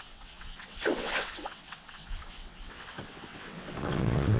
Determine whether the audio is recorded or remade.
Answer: remade